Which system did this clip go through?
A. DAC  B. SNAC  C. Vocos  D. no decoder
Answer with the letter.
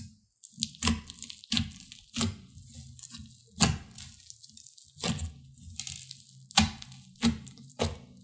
D